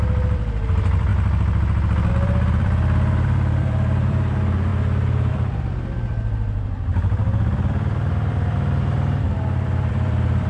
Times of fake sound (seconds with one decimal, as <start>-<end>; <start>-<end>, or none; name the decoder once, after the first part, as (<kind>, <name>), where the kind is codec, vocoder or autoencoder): 0.0-1.1 (vocoder, BigVGAN v2); 2.1-4.7; 5.3-10.5